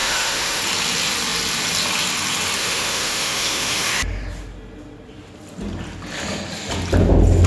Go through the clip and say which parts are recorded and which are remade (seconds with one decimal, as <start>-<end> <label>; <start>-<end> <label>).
0.0-0.6 remade; 0.6-2.6 recorded; 2.6-4.0 remade; 4.0-7.5 recorded